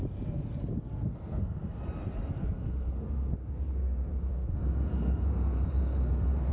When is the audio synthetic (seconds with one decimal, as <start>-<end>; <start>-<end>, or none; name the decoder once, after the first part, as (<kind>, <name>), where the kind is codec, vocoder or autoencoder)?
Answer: 1.0-1.8 (codec, SNAC); 2.4-6.5